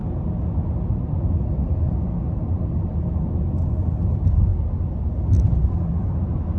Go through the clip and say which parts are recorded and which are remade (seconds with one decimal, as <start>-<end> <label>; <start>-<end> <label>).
0.0-6.6 recorded